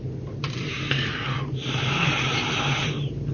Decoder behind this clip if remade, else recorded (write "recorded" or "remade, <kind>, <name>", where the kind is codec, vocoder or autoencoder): remade, vocoder, BigVGAN v2